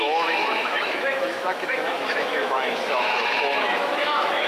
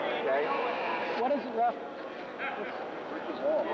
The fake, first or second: first